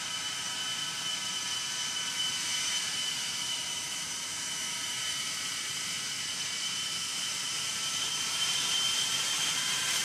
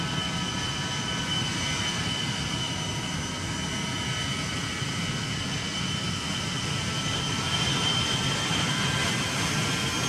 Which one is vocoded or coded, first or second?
first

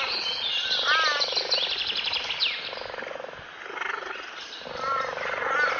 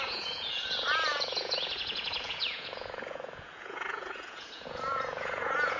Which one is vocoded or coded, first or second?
second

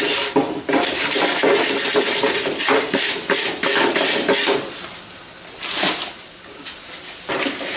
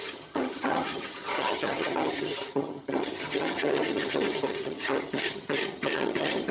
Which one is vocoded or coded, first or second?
second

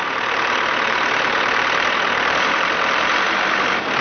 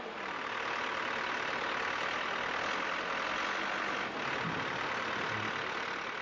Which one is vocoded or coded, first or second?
first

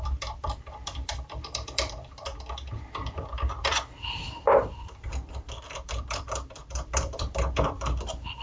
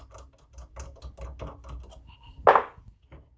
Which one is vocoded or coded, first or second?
first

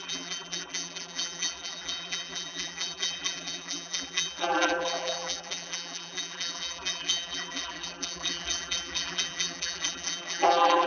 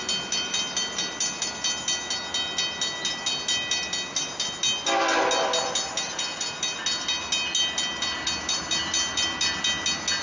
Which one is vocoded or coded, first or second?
first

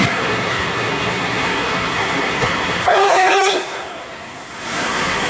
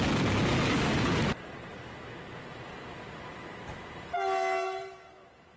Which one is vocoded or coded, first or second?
first